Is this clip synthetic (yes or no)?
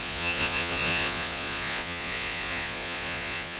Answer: yes